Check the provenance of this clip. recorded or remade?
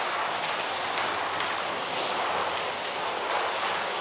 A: recorded